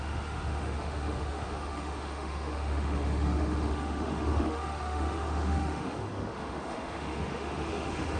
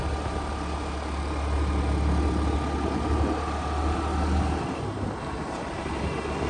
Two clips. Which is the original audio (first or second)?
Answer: second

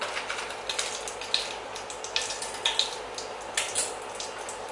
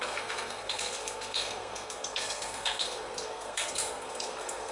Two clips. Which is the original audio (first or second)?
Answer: first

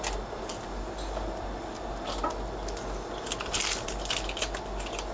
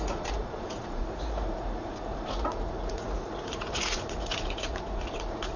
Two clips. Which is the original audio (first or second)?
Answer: first